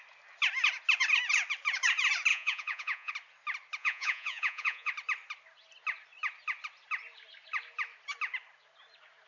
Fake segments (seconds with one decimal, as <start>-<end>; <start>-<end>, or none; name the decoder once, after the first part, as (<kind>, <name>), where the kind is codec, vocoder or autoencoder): 2.3-3.1 (vocoder, Vocos); 3.8-4.9